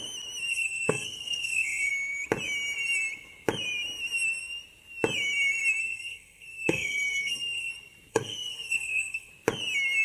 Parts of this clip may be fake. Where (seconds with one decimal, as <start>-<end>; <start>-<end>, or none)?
0.5-1.9; 5.8-7.7; 8.1-9.3